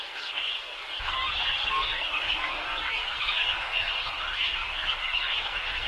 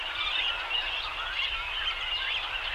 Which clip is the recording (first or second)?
second